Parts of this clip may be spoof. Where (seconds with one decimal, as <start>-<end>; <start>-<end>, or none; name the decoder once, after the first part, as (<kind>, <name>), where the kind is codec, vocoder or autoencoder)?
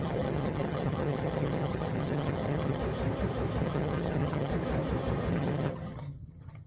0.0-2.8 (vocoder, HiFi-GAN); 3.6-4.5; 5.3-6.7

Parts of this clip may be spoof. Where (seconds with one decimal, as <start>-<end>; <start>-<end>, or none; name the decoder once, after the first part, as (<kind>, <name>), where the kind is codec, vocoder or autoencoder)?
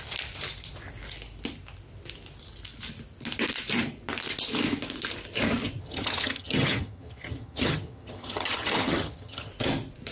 5.8-9.5 (vocoder, HiFi-GAN)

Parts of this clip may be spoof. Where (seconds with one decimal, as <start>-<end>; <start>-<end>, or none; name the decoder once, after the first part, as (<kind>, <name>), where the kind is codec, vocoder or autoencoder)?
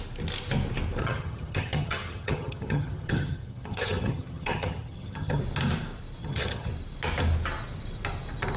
1.0-5.4 (vocoder, HiFi-GAN); 6.2-6.7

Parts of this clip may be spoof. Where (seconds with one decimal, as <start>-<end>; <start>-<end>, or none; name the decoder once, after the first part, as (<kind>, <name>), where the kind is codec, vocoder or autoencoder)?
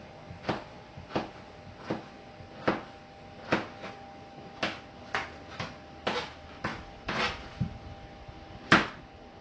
none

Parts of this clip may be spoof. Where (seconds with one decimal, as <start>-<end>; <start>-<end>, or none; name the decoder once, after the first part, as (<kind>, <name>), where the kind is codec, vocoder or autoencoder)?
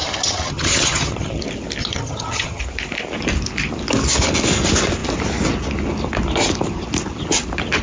0.0-1.4 (vocoder, HiFi-GAN); 1.8-2.6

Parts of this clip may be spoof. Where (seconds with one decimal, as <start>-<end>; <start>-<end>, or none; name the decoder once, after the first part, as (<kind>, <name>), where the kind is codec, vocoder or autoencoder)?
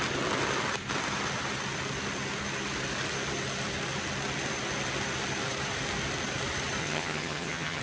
6.8-7.8 (vocoder, HiFi-GAN)